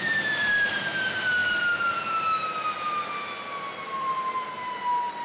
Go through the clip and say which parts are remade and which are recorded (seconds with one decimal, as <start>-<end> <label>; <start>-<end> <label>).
0.0-1.4 remade; 1.4-3.9 recorded; 3.9-5.2 remade

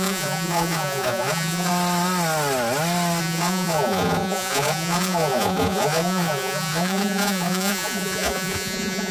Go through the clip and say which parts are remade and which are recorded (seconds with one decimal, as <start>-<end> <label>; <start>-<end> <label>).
0.0-1.7 remade; 1.7-3.2 recorded; 3.2-9.1 remade

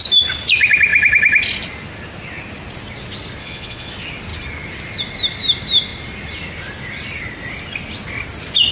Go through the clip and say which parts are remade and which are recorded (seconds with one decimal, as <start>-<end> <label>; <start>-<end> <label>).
0.0-3.4 recorded; 3.4-3.9 remade; 3.9-8.7 recorded

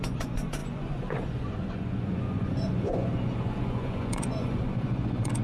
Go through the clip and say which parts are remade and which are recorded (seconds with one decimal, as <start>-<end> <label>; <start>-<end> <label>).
0.0-5.4 remade

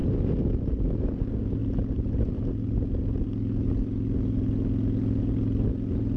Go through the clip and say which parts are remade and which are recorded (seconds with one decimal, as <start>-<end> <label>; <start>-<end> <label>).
0.0-6.2 recorded